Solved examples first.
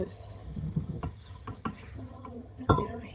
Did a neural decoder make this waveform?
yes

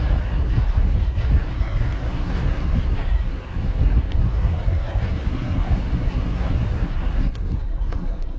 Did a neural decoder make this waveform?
yes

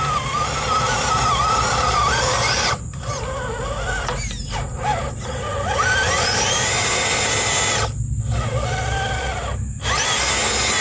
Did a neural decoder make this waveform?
no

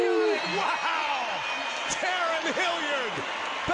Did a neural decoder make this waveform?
no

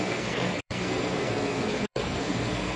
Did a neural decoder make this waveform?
yes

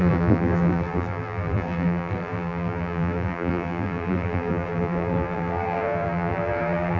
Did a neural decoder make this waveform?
yes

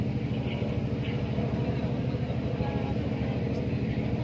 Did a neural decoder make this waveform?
no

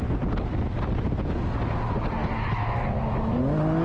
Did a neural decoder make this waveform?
no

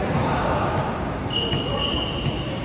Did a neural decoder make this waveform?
no